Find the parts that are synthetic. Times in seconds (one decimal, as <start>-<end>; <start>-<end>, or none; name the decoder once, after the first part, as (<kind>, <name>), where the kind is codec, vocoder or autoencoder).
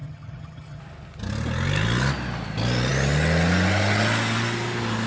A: 0.0-0.8 (vocoder, HiFi-GAN)